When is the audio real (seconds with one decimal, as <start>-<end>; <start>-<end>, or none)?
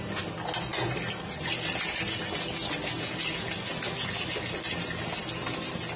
0.0-6.0